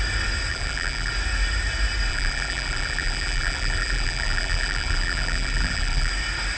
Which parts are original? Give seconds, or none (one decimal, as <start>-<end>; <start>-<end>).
0.0-0.5; 1.1-2.1; 6.1-6.6